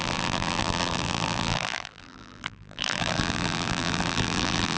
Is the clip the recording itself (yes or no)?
no